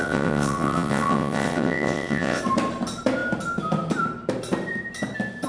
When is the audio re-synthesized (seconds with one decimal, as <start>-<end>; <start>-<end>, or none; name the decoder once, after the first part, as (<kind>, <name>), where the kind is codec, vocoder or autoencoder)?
0.0-2.4 (vocoder, WaveNeXt)